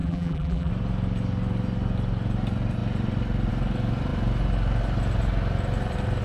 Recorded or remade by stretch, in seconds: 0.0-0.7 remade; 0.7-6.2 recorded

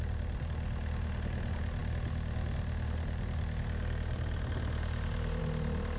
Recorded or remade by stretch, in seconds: 0.0-6.0 recorded

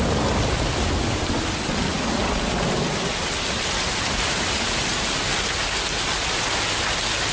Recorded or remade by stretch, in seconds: 0.0-7.3 recorded

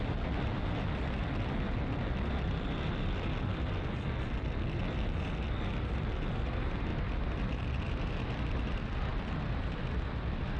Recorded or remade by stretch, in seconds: 0.0-10.6 recorded

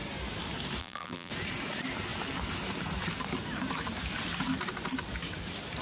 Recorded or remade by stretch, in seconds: 0.0-0.8 recorded; 0.8-1.3 remade; 1.3-5.8 recorded

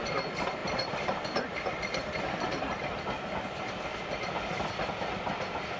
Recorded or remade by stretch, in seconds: 0.0-0.6 recorded; 0.6-3.7 remade; 3.7-5.8 recorded

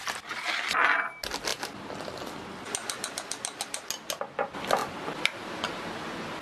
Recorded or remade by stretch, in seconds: 0.0-4.8 recorded; 4.8-5.5 remade; 5.5-6.4 recorded